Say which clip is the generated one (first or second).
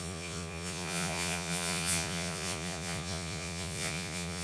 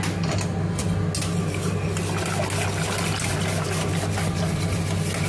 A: first